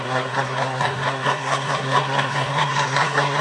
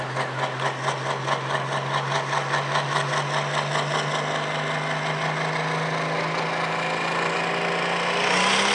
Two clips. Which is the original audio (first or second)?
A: second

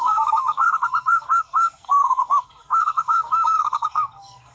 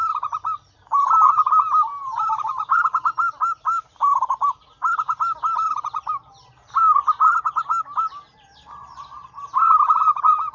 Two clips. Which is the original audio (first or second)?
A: second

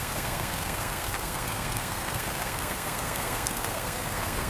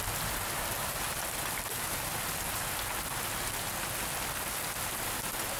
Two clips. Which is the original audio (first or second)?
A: second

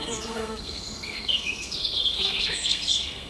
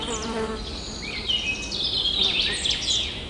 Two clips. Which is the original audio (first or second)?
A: second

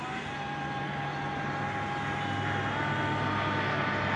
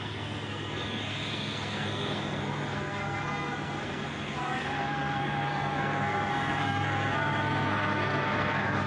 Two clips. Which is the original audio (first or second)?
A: first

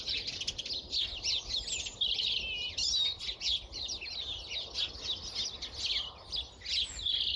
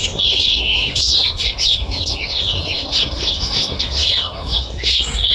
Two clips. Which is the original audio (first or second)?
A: first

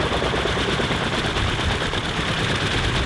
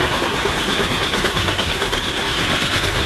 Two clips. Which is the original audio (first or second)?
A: first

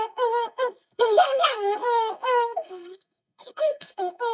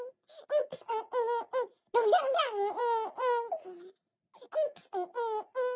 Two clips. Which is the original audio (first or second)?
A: second